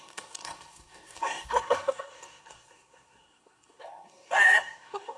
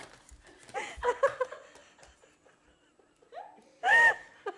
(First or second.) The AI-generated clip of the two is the first